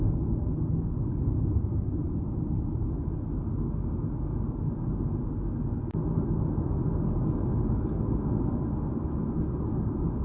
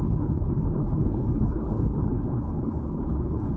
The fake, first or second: second